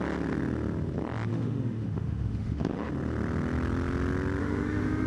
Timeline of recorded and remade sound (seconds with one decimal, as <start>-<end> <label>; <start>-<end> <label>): 0.0-1.3 recorded; 1.3-2.9 remade; 2.9-4.4 recorded; 4.4-5.1 remade